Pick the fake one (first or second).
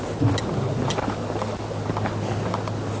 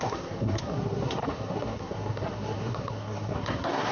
second